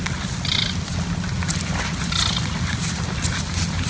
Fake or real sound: real